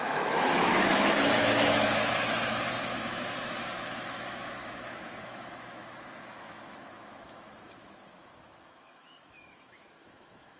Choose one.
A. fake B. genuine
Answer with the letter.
A